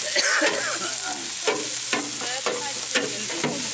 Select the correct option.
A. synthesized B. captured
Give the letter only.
B